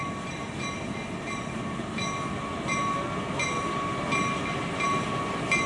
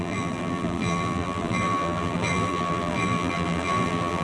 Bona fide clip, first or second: first